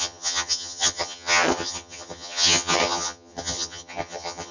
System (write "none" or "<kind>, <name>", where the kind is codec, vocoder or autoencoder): vocoder, HiFi-GAN